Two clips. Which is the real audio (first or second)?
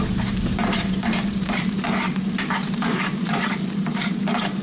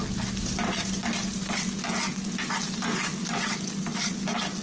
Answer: second